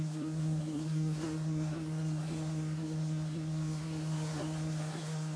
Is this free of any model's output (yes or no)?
no